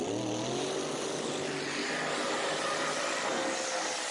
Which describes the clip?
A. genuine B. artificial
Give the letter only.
A